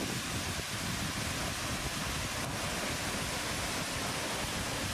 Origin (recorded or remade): recorded